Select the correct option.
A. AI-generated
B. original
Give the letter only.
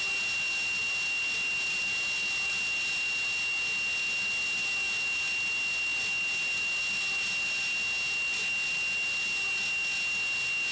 B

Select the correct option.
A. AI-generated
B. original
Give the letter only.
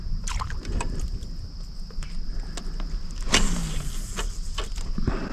B